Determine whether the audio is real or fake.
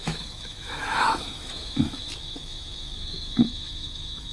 fake